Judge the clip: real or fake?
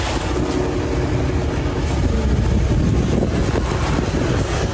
real